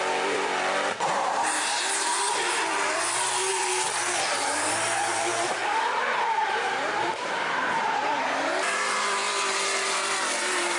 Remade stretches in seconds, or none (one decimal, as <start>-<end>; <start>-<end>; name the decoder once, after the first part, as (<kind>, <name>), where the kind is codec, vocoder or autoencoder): 0.0-2.1 (vocoder, BigVGAN v2); 3.5-5.6; 6.5-10.8